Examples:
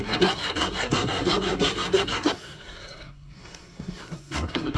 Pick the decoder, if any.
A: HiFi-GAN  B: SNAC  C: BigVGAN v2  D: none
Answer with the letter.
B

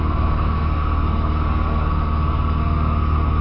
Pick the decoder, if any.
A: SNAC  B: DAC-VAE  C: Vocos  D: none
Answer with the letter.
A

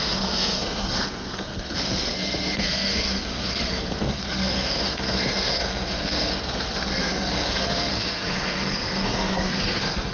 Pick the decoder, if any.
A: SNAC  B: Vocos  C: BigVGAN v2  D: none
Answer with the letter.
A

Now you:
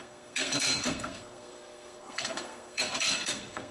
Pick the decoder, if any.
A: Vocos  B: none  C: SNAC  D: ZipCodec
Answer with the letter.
C